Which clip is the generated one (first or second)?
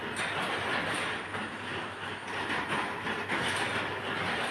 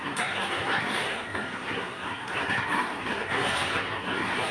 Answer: second